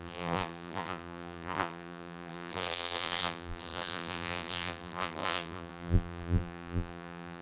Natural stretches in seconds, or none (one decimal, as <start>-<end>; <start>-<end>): none